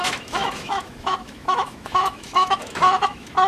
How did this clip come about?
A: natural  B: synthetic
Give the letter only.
B